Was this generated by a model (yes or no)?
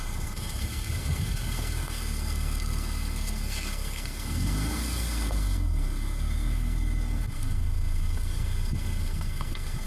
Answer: yes